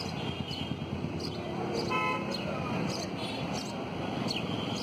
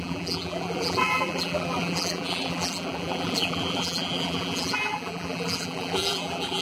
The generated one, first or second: second